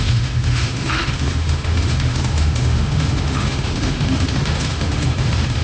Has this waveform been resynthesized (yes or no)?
yes